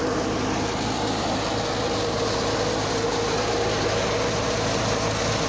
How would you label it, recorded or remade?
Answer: recorded